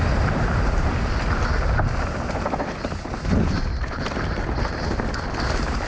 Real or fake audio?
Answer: real